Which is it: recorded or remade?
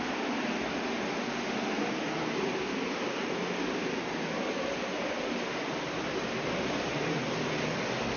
recorded